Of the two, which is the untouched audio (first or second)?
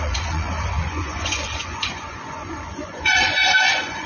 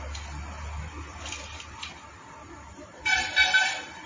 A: second